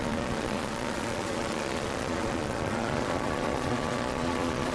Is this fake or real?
fake